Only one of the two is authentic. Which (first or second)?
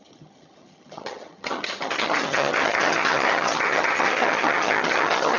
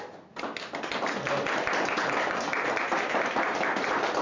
second